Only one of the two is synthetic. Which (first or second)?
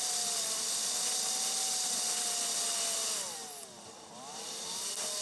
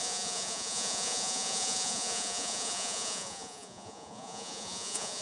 second